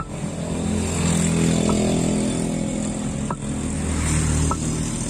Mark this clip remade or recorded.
recorded